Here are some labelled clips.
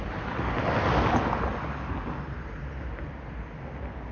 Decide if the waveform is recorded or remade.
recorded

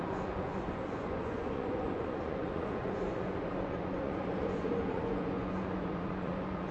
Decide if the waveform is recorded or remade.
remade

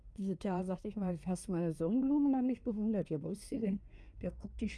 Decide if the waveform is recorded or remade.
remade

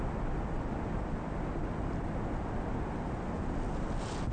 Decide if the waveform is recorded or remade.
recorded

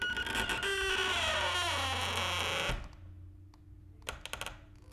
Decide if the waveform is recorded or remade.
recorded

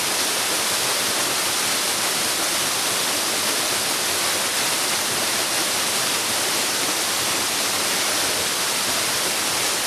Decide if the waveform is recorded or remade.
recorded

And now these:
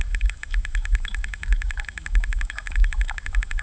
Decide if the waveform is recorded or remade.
remade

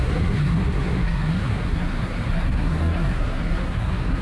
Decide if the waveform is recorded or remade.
remade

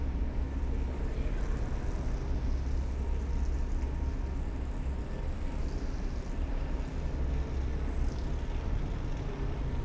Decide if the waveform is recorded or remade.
recorded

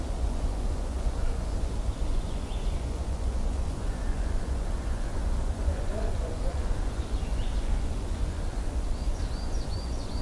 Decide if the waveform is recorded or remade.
remade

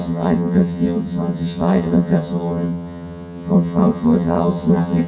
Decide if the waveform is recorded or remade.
remade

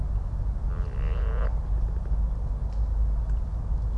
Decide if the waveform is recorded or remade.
recorded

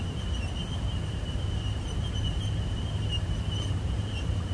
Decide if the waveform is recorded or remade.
recorded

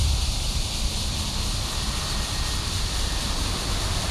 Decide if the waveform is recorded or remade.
remade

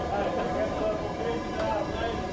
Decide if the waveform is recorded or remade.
recorded